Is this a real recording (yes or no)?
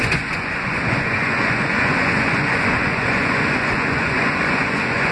no